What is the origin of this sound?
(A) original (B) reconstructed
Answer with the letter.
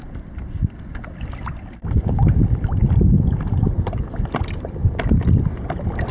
A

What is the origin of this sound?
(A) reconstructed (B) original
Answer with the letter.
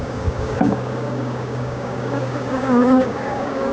A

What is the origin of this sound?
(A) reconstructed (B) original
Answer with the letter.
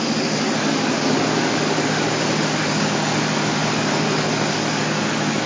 A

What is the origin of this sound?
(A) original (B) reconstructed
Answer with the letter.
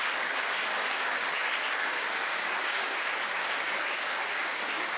B